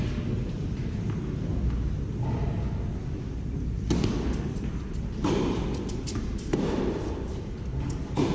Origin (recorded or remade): recorded